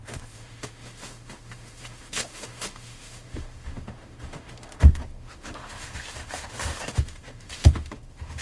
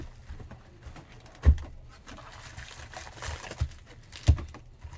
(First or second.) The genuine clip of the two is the second